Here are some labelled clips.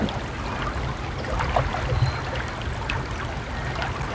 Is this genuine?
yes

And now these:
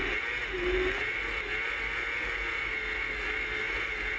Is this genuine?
yes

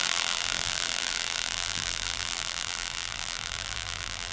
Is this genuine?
no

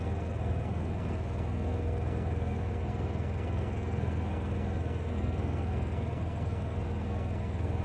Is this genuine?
no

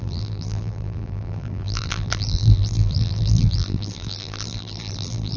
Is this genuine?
no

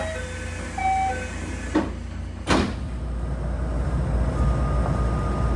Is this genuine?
yes